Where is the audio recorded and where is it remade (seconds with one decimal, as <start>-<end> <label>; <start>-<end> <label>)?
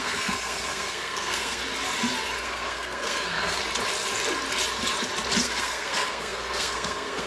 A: 0.0-1.6 remade; 1.6-2.4 recorded; 2.4-3.6 remade; 3.6-5.4 recorded; 5.4-7.3 remade